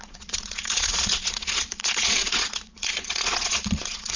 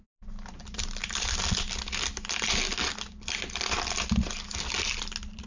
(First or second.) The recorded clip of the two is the second